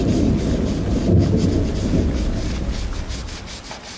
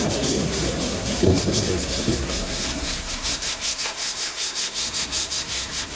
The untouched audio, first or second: first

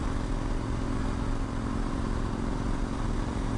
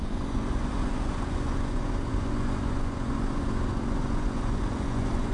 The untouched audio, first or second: first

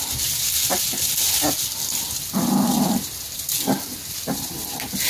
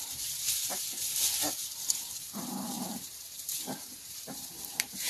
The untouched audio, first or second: first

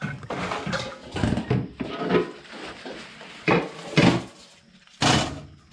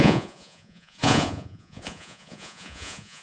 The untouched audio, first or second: first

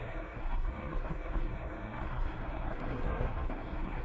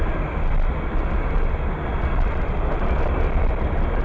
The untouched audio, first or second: second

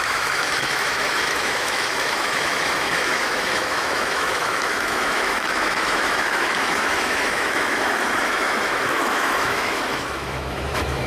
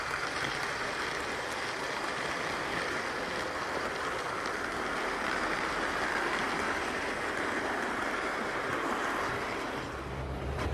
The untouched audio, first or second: second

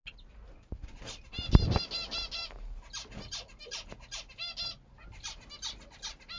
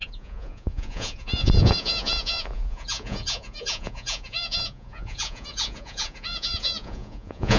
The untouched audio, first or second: first